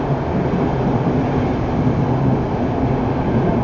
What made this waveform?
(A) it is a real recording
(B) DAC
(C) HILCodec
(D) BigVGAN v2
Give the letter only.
A